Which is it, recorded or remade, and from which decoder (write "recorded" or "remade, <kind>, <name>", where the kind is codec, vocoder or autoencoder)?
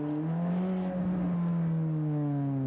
recorded